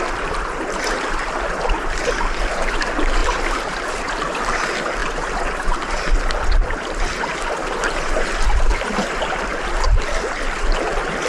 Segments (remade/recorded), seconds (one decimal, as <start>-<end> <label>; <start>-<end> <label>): 0.0-3.2 recorded; 3.2-4.1 remade; 4.1-5.0 recorded; 5.0-5.7 remade; 5.7-9.5 recorded; 9.5-10.1 remade; 10.1-11.3 recorded